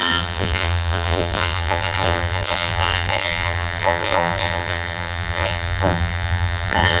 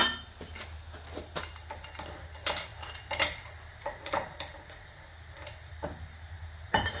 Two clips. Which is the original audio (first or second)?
second